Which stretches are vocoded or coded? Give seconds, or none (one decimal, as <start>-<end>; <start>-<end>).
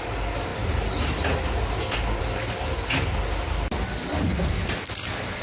none